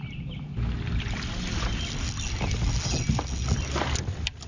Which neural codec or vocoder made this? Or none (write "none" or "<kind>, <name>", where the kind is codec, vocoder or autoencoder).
none